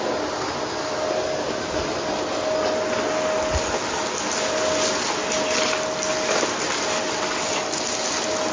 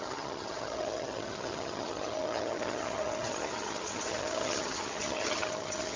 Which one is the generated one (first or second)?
second